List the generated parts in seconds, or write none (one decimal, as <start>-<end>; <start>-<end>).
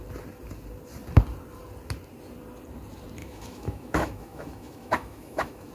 3.2-5.7